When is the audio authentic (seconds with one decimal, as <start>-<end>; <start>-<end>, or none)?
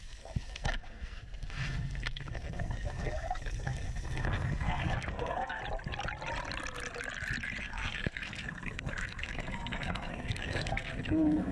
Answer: 5.6-7.6